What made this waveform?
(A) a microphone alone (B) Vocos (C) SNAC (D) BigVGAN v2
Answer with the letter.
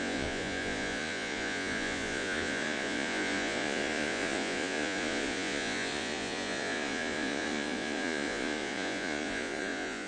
B